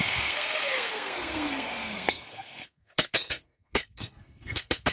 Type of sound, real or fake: fake